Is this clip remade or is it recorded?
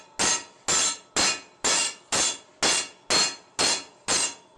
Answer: recorded